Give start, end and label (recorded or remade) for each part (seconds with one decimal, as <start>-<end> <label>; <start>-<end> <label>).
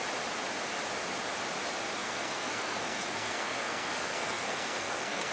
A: 0.0-2.0 recorded; 2.0-5.3 remade